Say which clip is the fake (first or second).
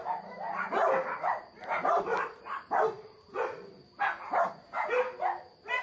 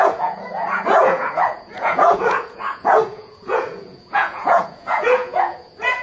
second